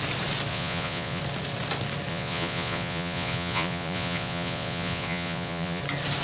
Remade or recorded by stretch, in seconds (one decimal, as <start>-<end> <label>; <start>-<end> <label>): 0.0-0.5 recorded; 0.5-1.2 remade; 1.2-2.1 recorded; 2.1-5.8 remade; 5.8-6.2 recorded